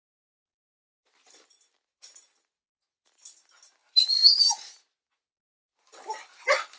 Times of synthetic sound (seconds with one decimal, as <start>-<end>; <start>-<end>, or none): none